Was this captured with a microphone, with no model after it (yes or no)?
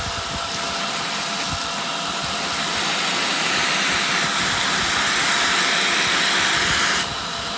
yes